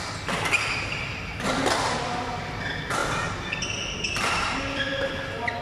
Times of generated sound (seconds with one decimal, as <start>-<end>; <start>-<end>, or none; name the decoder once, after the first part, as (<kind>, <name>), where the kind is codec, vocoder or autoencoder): 3.0-4.8 (vocoder, BigVGAN v2)